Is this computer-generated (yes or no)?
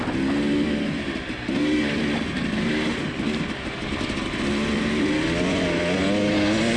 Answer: no